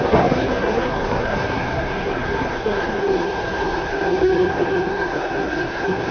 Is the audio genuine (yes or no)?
no